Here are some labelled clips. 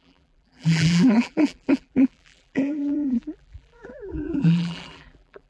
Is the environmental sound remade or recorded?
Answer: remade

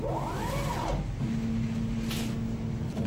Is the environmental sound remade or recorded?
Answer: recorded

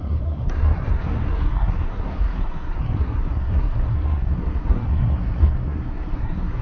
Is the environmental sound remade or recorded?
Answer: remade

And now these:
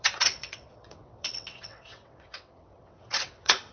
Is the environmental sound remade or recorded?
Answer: remade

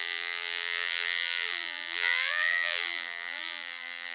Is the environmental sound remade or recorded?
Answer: remade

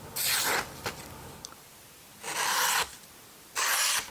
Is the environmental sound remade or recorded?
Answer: recorded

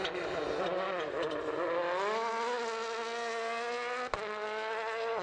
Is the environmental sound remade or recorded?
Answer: recorded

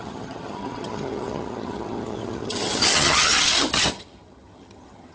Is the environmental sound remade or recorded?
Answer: remade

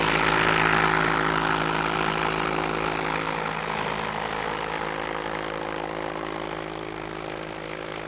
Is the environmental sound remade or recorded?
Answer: recorded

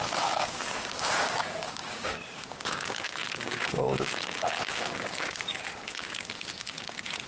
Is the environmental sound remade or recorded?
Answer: remade